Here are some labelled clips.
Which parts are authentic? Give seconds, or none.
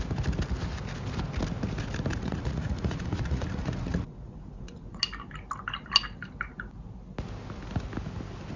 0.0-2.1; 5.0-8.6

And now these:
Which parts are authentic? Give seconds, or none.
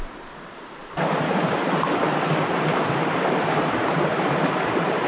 0.0-5.1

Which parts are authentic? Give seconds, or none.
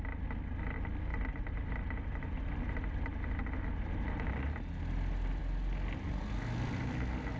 0.0-7.4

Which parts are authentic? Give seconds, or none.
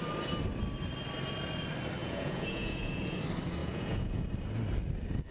0.0-2.0; 3.2-3.6; 4.1-5.3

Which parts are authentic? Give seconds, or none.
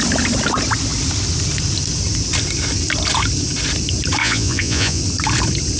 0.0-4.2; 5.0-5.8